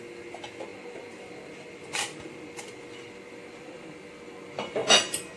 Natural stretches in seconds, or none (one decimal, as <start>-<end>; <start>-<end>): 0.0-5.4